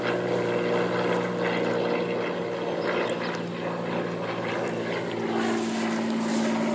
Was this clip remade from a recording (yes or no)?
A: no